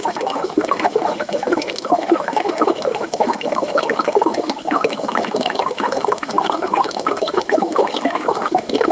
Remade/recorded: remade